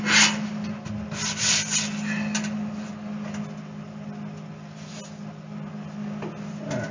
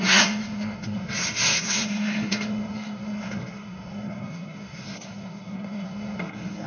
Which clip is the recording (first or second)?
first